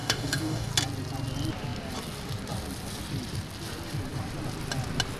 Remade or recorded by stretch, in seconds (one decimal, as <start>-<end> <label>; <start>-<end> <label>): 0.0-0.7 remade; 0.7-5.2 recorded